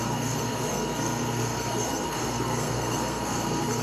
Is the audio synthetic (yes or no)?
yes